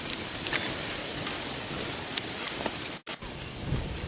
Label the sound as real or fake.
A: real